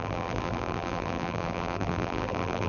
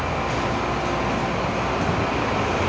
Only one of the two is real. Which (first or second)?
second